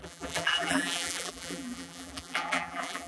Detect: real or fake fake